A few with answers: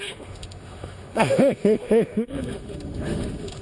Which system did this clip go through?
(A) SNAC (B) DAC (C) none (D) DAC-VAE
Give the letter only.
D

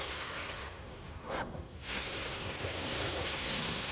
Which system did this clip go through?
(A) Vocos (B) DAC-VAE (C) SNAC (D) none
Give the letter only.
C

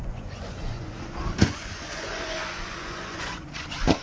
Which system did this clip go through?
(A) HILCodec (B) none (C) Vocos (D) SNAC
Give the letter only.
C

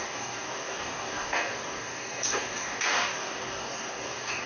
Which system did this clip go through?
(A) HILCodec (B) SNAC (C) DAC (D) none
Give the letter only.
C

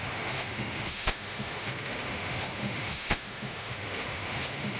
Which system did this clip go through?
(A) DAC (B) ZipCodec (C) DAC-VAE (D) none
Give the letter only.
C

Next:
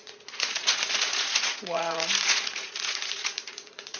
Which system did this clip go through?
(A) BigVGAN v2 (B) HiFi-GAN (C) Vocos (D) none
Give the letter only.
C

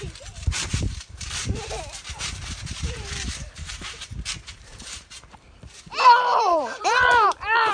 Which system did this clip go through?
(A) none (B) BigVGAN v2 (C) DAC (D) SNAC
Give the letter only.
B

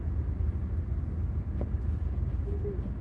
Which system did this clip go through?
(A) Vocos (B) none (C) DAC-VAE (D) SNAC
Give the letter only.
B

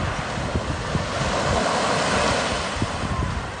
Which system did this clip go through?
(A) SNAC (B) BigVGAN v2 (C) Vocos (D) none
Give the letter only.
D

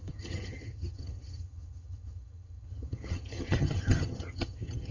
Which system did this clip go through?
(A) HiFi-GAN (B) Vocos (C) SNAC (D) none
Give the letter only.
A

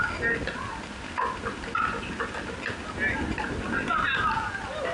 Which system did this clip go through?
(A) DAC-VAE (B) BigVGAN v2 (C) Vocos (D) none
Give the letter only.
D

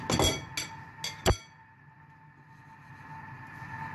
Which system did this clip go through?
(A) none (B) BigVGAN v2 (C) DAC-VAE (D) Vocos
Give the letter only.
A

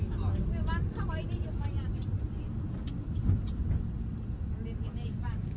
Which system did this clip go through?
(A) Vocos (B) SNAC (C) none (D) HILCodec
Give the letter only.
C